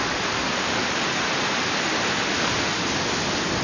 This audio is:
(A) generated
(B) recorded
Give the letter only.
B